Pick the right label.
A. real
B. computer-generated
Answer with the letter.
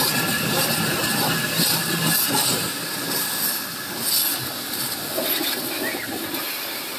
A